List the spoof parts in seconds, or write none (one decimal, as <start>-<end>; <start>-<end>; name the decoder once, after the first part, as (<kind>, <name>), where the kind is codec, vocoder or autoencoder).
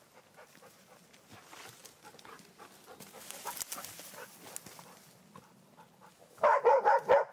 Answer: 6.1-6.6 (autoencoder, DAC-VAE)